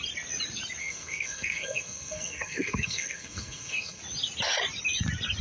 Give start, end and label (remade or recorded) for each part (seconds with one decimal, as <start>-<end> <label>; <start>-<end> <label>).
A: 0.0-0.8 recorded; 0.8-4.0 remade; 4.0-5.4 recorded